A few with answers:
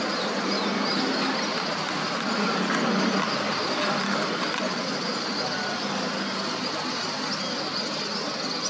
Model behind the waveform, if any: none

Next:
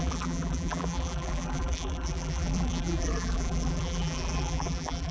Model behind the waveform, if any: vocoder, BigVGAN v2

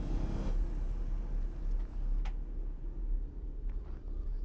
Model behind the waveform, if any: none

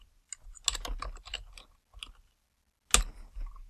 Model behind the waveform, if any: none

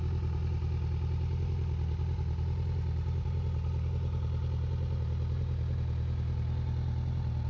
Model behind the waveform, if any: none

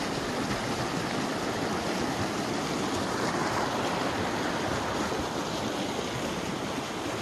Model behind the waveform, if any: none